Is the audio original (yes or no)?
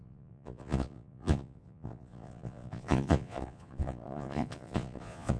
no